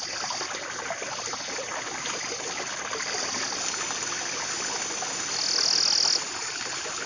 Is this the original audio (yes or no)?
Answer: yes